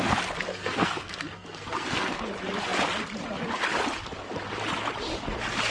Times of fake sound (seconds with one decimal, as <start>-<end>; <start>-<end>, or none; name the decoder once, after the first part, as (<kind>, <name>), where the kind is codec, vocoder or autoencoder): 0.5-2.2 (codec, SNAC)